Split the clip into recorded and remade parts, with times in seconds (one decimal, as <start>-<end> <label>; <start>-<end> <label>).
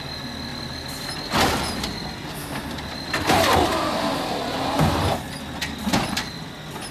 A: 0.0-3.7 recorded; 3.7-4.4 remade; 4.4-6.9 recorded